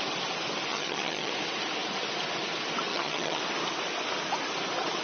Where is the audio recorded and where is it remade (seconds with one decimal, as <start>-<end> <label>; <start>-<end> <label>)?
0.0-0.7 recorded; 0.7-1.3 remade; 1.3-2.9 recorded; 2.9-3.4 remade; 3.4-5.0 recorded